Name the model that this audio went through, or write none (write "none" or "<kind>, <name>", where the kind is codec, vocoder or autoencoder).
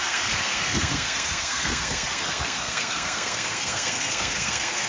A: codec, SNAC